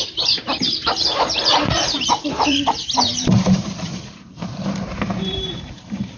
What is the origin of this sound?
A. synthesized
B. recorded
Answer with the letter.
A